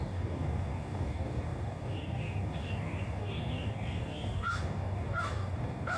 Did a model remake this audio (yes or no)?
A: yes